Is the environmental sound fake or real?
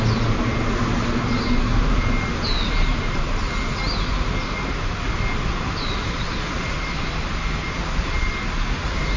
real